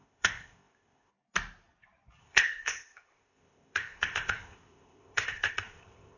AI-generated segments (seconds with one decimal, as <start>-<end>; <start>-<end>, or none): 0.0-1.1; 2.2-6.2